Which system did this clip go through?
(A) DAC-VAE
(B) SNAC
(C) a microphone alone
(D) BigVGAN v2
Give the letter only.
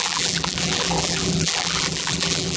D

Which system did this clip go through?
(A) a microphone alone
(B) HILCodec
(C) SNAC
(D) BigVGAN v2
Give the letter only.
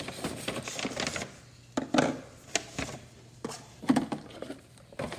A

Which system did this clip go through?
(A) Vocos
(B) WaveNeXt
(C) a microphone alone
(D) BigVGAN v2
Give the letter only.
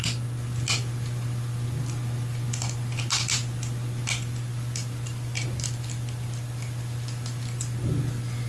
C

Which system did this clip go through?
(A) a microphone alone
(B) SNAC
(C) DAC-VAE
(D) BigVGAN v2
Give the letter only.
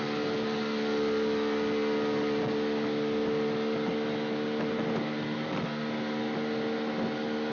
A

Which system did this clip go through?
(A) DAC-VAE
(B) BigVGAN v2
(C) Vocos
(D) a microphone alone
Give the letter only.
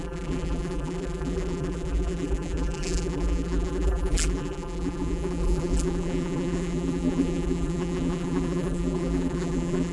B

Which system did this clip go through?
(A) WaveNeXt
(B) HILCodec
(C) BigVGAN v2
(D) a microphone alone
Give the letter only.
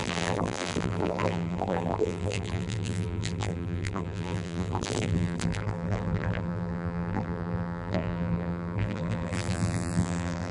C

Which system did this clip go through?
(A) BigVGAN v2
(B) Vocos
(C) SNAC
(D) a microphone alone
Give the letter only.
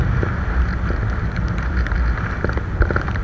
D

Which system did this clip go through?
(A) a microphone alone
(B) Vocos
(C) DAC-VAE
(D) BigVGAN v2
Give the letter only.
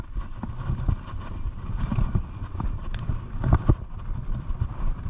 A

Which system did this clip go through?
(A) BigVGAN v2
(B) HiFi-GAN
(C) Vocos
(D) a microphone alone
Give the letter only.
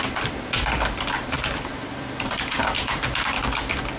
A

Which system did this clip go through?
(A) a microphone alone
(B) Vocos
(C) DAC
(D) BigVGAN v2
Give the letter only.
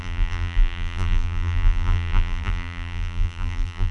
D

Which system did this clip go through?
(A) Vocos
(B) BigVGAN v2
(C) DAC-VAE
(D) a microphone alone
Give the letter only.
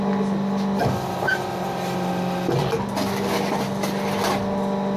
D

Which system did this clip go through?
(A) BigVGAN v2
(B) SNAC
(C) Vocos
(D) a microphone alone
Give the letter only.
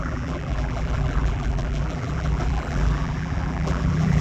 A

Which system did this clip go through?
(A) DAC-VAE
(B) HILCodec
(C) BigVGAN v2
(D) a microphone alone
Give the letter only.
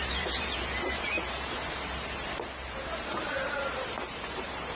C